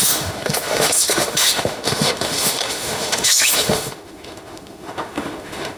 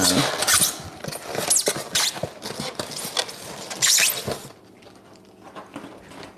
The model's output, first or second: first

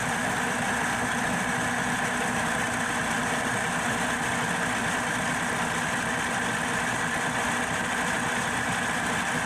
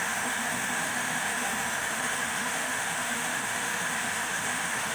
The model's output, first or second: second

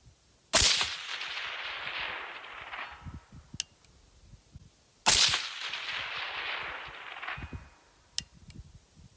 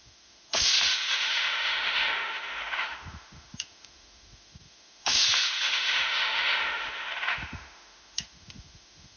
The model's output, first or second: second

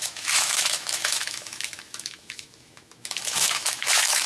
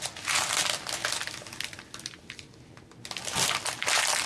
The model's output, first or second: first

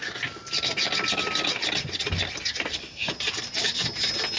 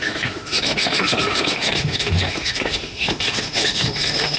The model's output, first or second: second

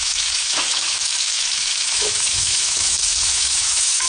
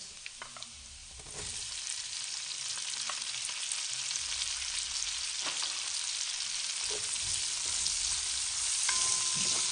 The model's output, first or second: first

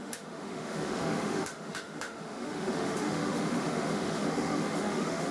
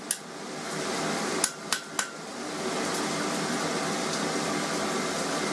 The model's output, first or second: first